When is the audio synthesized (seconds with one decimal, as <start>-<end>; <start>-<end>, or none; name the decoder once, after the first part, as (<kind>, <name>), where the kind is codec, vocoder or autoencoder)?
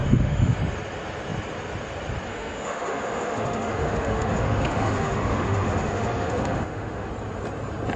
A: 0.0-0.7 (autoencoder, DAC-VAE); 2.3-7.1